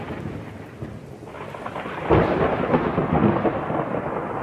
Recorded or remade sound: recorded